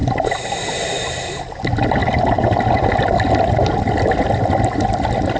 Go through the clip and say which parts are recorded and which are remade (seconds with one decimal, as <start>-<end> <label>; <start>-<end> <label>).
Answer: 0.0-5.4 recorded